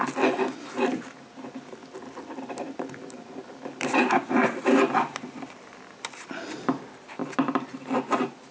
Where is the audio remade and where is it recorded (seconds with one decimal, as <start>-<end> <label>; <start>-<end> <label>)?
0.0-1.8 recorded; 1.8-6.4 remade; 6.4-7.2 recorded; 7.2-7.7 remade; 7.7-8.5 recorded